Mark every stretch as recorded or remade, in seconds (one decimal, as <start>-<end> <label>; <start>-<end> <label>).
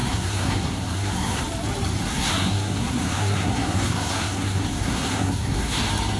0.0-1.4 remade; 1.4-2.1 recorded; 2.1-5.8 remade; 5.8-6.2 recorded